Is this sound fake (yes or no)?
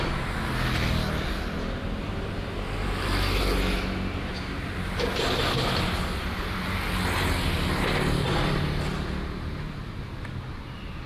no